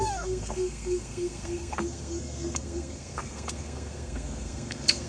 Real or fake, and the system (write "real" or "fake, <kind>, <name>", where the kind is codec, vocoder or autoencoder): fake, codec, SNAC